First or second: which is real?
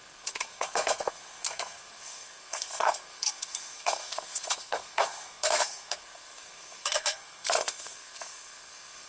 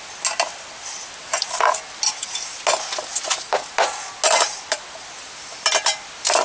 second